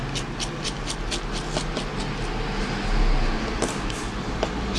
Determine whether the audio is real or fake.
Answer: real